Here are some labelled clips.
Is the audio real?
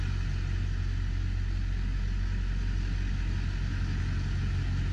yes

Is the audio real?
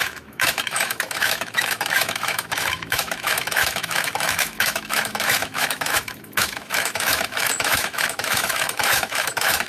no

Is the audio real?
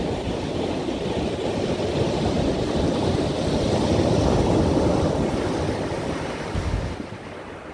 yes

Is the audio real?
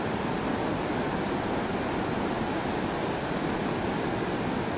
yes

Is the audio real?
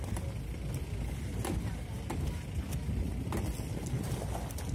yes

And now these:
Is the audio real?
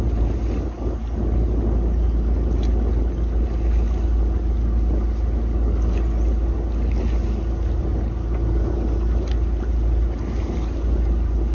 yes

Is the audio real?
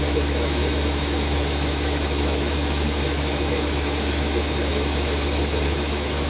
no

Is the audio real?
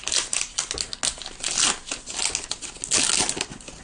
yes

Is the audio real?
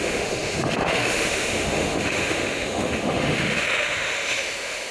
no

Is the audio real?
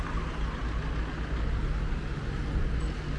yes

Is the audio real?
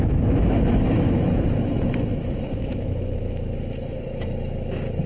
no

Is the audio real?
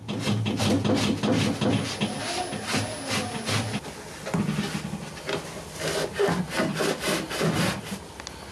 yes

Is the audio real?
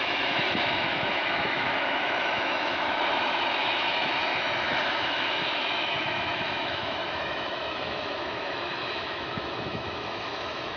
no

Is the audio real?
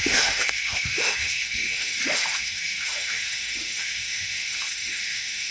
no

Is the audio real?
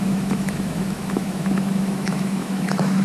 no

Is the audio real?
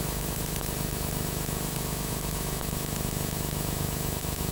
no